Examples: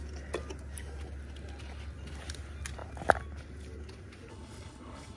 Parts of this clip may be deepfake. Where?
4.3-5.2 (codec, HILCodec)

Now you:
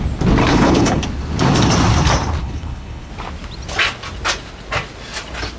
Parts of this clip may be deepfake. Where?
0.4-1.0 (codec, HILCodec); 2.4-3.1

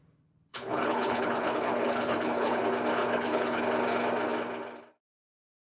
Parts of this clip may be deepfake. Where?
0.5-2.6 (codec, HILCodec); 3.0-3.6

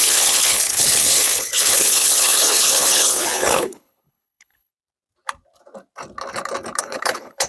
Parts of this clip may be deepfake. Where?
0.0-4.7 (codec, HILCodec); 6.8-7.5

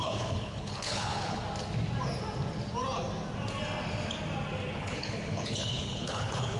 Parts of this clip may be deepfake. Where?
0.0-1.4 (codec, HILCodec); 4.8-6.6

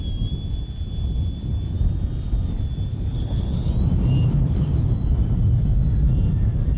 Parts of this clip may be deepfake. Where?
3.1-3.7 (codec, HILCodec); 4.3-4.9

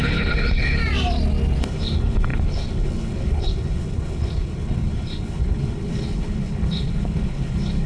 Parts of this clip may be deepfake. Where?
0.0-0.8 (codec, HILCodec); 1.6-7.9

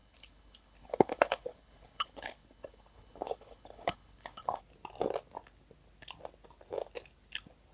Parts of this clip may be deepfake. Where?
0.0-4.6 (codec, HILCodec)